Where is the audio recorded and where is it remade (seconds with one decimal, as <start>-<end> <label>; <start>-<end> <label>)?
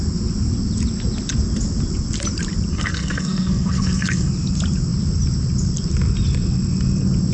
0.0-2.7 recorded; 2.7-4.3 remade; 4.3-7.3 recorded